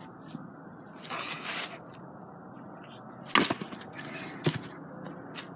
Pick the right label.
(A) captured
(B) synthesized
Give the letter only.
A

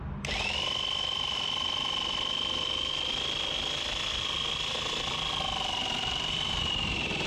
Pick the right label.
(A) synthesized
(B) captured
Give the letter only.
B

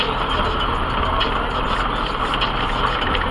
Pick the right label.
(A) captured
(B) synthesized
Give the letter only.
A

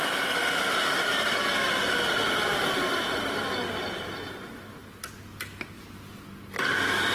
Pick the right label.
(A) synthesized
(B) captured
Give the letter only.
B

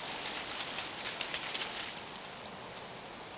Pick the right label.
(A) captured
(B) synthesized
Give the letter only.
A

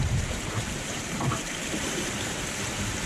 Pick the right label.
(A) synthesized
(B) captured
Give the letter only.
A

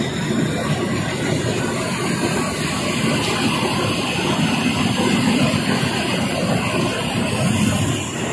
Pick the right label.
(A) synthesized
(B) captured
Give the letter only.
B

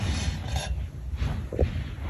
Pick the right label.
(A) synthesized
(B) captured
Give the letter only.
A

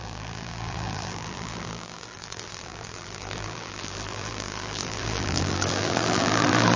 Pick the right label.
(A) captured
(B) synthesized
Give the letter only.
B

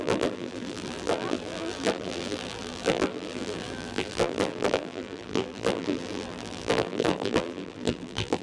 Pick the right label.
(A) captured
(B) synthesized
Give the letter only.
B